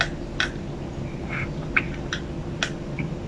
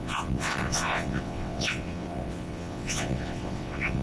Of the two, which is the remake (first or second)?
second